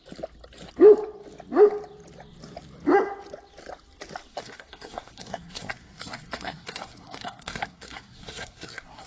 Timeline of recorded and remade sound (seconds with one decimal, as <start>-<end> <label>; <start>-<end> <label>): 0.0-4.3 recorded; 4.3-9.1 remade